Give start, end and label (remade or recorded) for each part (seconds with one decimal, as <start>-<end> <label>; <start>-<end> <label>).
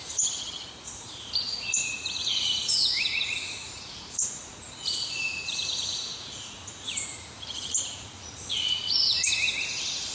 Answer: 0.0-9.3 remade; 9.3-10.1 recorded